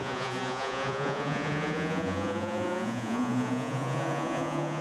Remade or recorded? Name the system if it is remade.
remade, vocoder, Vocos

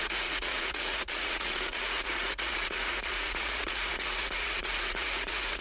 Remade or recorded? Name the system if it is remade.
remade, vocoder, Vocos